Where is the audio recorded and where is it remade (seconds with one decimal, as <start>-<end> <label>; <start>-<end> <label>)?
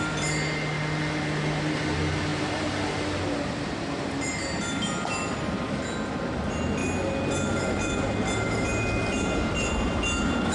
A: 0.0-10.5 recorded